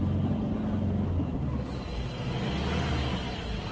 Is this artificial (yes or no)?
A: no